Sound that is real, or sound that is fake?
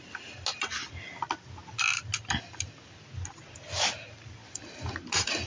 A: real